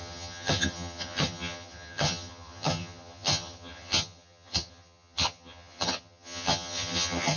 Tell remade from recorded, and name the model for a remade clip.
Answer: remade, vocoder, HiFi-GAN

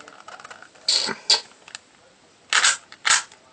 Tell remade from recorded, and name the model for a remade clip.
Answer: recorded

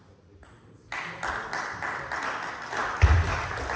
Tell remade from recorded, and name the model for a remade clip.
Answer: recorded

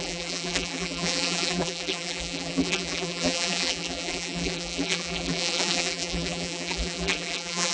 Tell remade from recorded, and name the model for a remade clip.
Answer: remade, vocoder, BigVGAN v2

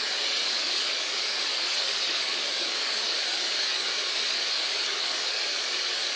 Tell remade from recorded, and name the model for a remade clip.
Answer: remade, codec, DAC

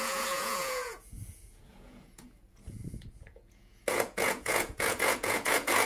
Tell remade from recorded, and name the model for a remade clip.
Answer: remade, vocoder, Vocos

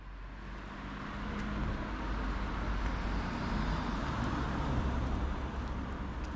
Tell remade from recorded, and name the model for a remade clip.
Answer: recorded